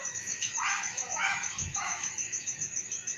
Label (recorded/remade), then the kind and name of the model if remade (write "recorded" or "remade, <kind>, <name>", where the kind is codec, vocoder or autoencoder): remade, autoencoder, DAC-VAE